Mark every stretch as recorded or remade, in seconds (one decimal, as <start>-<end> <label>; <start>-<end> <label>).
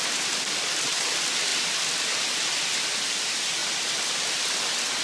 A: 0.0-0.7 remade; 0.7-3.6 recorded; 3.6-4.4 remade; 4.4-5.0 recorded